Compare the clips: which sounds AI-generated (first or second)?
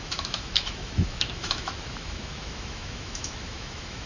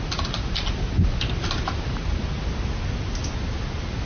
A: first